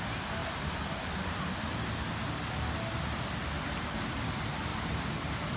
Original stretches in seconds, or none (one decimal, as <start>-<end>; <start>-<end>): 0.0-5.6